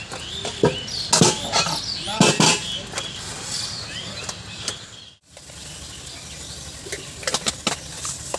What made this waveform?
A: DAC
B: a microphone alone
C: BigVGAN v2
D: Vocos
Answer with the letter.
B